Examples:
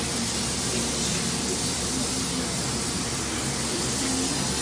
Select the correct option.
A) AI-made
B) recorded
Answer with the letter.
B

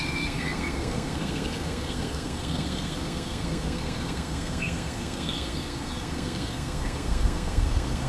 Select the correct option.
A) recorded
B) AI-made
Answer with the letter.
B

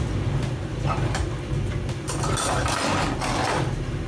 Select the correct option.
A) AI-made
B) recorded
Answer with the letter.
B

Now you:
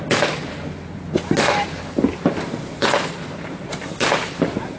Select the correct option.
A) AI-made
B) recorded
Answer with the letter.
B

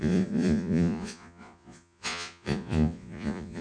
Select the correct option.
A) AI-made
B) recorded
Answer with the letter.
A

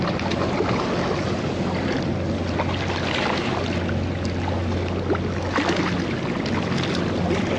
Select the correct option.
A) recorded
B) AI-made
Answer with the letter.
A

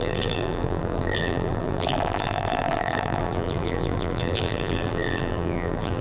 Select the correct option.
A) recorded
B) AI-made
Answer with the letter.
B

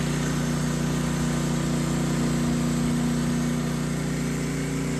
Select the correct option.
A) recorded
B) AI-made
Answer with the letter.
A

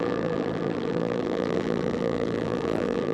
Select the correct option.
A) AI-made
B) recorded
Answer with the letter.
A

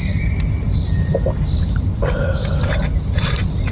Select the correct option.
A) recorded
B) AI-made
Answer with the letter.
A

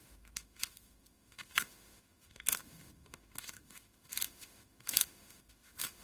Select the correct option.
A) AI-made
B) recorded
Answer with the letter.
A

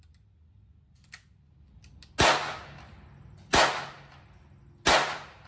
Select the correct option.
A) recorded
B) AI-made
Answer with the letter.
A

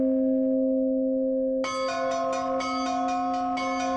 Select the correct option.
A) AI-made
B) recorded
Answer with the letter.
B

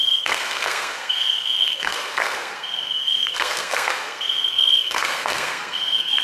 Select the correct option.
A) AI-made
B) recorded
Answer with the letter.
A